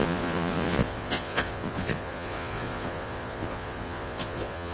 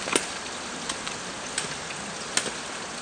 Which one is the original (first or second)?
second